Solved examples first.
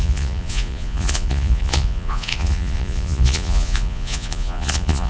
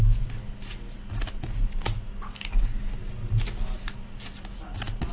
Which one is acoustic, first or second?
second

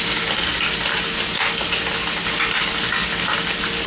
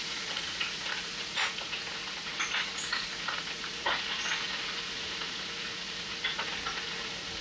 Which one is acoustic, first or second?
first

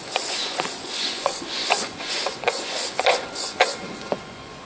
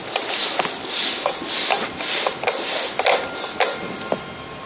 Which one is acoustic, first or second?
second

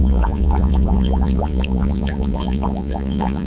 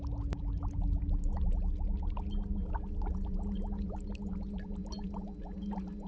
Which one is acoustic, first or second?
second